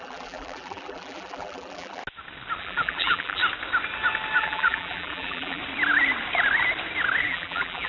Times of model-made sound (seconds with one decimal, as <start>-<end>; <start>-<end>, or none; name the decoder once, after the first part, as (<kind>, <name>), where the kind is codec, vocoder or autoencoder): 0.0-2.0 (vocoder, BigVGAN v2); 2.6-3.4; 4.4-5.6; 7.2-7.9